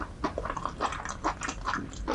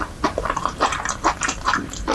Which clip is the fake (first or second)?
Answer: second